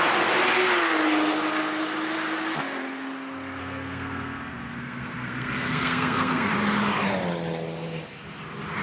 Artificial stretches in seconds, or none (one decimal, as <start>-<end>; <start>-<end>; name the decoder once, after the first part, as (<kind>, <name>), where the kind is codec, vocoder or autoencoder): 3.6-6.5 (codec, SNAC)